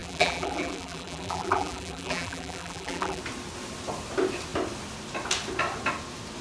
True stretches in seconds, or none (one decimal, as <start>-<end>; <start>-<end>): 3.2-6.4

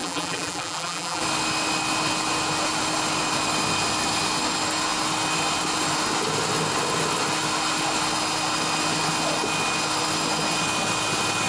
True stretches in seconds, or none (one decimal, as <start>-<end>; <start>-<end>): 1.2-11.5

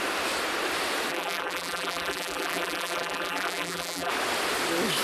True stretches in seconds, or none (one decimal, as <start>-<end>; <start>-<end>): 0.0-1.1; 4.1-5.0

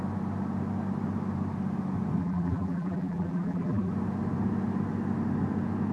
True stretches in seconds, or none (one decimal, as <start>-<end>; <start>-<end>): 0.0-2.2; 3.9-5.9

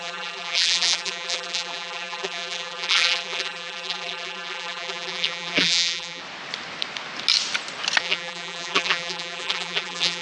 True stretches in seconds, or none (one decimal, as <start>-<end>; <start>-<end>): 6.2-8.0

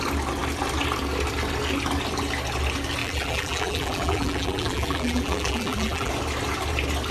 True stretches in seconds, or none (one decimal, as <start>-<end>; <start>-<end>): 0.0-3.0; 6.1-7.1

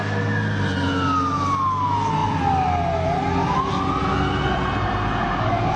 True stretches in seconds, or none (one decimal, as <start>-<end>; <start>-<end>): 0.0-5.8